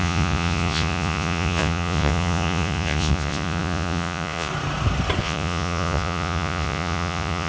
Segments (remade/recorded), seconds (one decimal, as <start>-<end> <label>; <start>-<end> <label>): 0.0-4.5 remade; 4.5-5.2 recorded; 5.2-7.5 remade